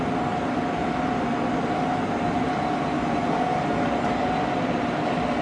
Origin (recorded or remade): recorded